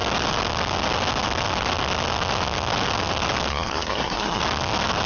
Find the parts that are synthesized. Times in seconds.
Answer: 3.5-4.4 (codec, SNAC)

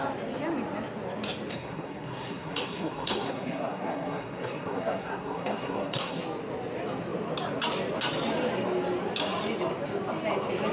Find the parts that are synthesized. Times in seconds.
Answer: 1.5-6.2 (codec, SNAC)

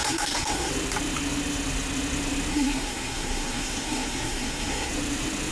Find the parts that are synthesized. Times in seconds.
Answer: 0.0-0.7 (codec, SNAC); 2.5-4.9

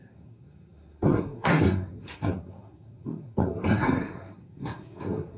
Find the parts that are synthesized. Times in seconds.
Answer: 0.0-5.4 (codec, SNAC)

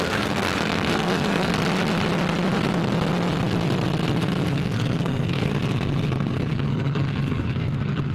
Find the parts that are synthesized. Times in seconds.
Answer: 0.0-1.5 (codec, SNAC); 4.5-5.5; 6.5-8.1